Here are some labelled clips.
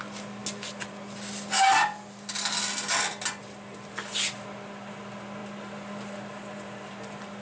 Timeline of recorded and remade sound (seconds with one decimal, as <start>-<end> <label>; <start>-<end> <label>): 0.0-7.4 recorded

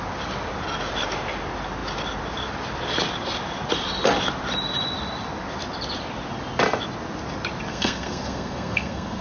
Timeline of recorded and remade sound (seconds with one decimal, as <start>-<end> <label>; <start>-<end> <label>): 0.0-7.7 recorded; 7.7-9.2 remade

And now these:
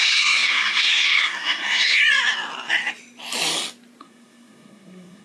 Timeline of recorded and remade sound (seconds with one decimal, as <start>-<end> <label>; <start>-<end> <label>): 0.0-2.0 remade; 2.0-4.0 recorded; 4.0-5.2 remade

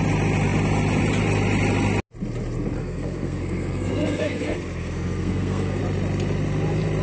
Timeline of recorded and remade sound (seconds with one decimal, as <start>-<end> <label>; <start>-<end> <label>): 0.0-2.8 recorded; 2.8-5.8 remade; 5.8-7.0 recorded

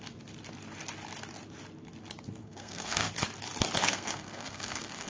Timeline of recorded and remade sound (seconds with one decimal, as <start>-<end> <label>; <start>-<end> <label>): 0.0-2.4 recorded; 2.4-3.1 remade; 3.1-3.8 recorded; 3.8-5.1 remade

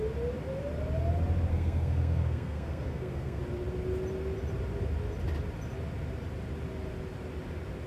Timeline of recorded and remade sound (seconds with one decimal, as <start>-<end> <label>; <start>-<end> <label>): 0.0-1.5 recorded; 1.5-3.4 remade; 3.4-7.9 recorded

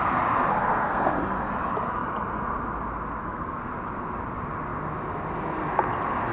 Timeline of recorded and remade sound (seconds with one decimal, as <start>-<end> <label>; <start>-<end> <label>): 0.0-0.5 recorded; 0.5-1.2 remade; 1.2-3.2 recorded; 3.2-3.7 remade; 3.7-6.3 recorded

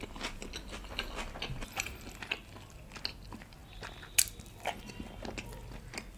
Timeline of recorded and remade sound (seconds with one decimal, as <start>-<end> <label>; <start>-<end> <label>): 0.0-6.2 recorded